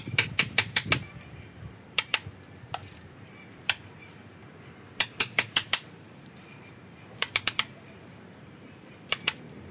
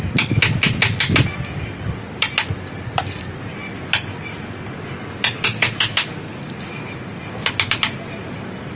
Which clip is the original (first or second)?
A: second